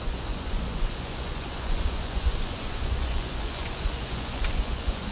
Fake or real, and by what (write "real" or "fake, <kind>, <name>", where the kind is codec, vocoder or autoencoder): fake, vocoder, Vocos